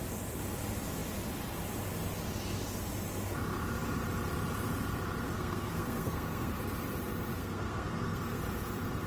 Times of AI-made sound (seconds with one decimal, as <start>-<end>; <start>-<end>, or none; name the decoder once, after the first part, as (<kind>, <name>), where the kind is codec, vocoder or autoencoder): 5.3-6.6 (codec, SNAC); 7.3-8.4